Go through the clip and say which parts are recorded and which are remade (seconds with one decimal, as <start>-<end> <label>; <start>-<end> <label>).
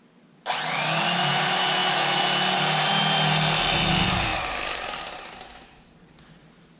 0.0-6.8 recorded